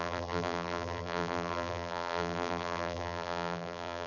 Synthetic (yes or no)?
yes